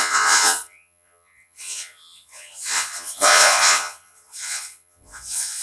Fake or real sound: fake